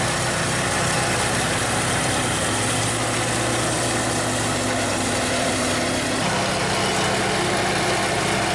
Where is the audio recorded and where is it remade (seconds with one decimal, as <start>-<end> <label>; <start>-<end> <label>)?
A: 0.0-4.9 recorded; 4.9-5.9 remade; 5.9-8.5 recorded